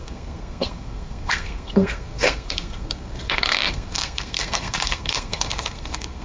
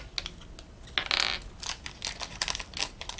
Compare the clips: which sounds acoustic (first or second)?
second